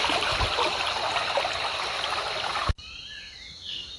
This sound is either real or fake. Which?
real